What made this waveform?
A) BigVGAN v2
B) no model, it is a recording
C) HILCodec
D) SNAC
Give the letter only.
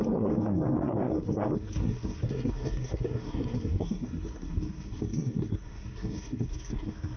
D